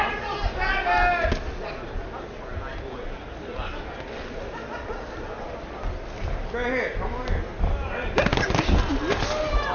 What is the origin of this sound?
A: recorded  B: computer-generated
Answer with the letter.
A